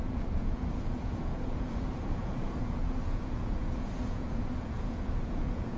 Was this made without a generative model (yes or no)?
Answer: no